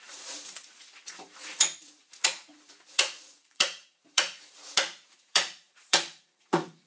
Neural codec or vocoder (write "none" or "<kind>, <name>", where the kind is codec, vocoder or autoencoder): vocoder, Vocos